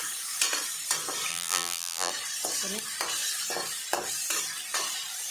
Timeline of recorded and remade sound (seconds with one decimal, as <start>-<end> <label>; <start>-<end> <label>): 0.0-1.3 recorded; 1.3-2.1 remade; 2.1-5.3 recorded